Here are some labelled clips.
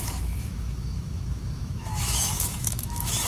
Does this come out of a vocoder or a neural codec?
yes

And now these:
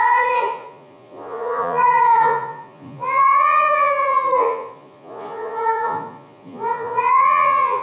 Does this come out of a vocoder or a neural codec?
yes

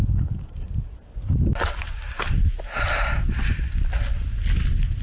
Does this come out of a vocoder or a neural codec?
no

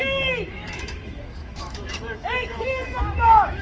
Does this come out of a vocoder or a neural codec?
yes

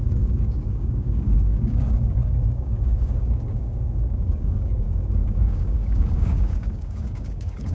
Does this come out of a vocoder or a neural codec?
yes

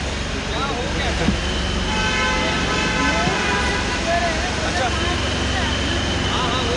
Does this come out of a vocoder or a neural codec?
no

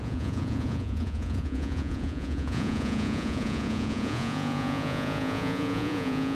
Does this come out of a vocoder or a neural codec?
yes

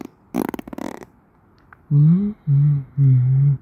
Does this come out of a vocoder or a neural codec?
no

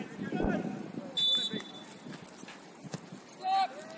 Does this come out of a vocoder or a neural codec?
no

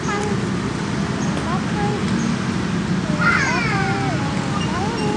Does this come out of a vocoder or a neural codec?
no